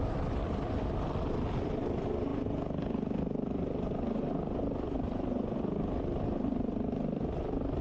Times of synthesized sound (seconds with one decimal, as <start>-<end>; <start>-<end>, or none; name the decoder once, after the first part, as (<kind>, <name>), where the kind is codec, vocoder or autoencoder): 0.0-2.3 (vocoder, BigVGAN v2); 4.6-7.8

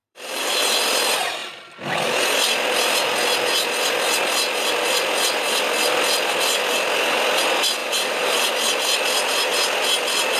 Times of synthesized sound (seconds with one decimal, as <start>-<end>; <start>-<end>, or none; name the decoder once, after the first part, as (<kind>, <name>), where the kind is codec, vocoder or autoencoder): 0.0-0.6 (vocoder, BigVGAN v2); 7.8-8.5

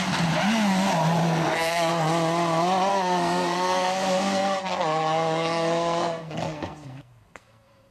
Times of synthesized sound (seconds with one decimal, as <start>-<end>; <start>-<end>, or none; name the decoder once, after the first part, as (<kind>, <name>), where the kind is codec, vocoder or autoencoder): 1.2-1.9 (codec, SNAC); 2.9-7.9

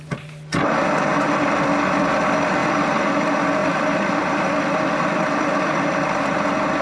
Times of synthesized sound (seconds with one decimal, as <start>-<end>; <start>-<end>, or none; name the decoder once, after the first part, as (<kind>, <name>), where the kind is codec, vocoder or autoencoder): 1.1-2.1 (vocoder, BigVGAN v2); 3.6-6.8

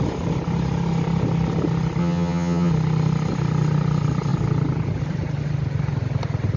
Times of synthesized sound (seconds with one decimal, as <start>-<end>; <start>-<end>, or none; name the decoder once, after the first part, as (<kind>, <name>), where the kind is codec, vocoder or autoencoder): 2.0-2.7 (vocoder, HiFi-GAN)

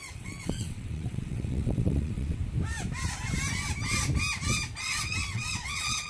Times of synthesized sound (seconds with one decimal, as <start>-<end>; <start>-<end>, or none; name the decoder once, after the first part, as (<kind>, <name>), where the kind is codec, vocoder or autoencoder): 0.0-2.4 (vocoder, WaveNeXt); 4.8-6.1

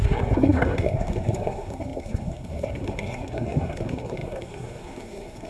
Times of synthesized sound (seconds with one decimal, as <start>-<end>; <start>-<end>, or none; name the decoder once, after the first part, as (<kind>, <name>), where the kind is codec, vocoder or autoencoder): 0.0-5.5 (codec, SNAC)

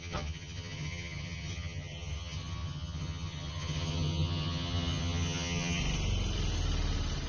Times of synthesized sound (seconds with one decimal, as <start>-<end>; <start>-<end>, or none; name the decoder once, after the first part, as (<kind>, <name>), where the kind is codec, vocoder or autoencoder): 0.0-5.8 (vocoder, HiFi-GAN)